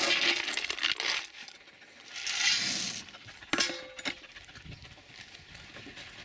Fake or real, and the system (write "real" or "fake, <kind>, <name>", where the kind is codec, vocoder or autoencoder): real